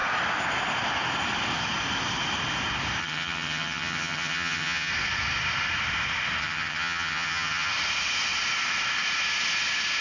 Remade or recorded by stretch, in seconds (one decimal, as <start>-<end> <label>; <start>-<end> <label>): 0.0-3.0 recorded; 3.0-4.9 remade; 4.9-6.4 recorded; 6.4-7.7 remade; 7.7-10.0 recorded